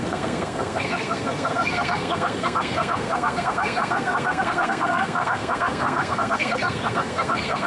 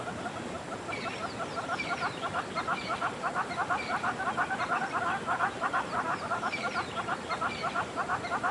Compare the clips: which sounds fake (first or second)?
first